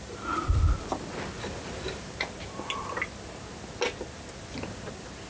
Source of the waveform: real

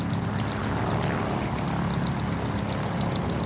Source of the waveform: real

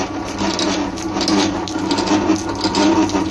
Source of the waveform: real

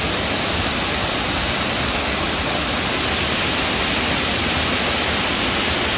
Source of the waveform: real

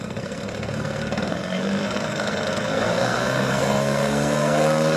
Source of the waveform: fake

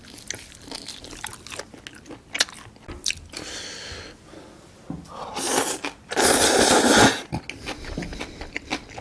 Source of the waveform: real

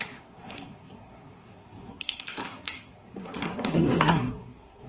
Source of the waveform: fake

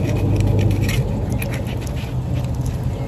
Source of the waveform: real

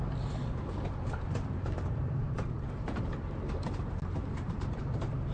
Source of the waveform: fake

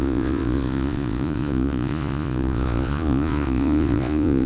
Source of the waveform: fake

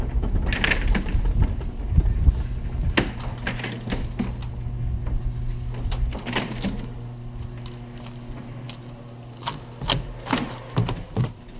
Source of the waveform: real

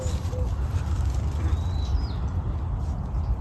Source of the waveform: real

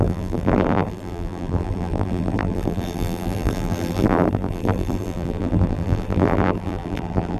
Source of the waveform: fake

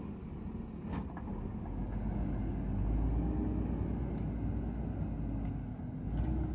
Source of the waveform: real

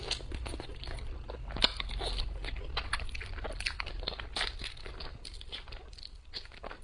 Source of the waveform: real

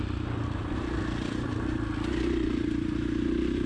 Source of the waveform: fake